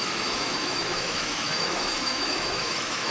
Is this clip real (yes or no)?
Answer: no